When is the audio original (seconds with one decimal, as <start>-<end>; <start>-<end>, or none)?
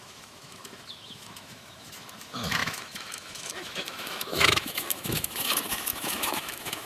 none